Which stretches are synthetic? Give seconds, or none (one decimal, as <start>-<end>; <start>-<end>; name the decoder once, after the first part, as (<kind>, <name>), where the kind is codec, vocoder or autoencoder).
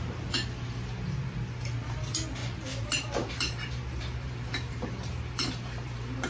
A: 2.4-6.3 (vocoder, BigVGAN v2)